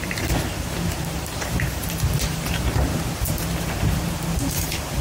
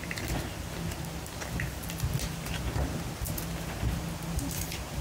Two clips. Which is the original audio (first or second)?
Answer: second